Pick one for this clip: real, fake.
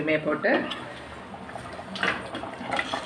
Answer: real